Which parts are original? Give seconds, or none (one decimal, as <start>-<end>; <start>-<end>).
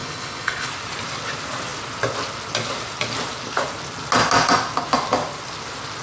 0.7-6.0